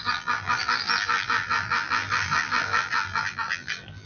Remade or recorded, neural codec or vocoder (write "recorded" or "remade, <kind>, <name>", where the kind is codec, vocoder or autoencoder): remade, vocoder, BigVGAN v2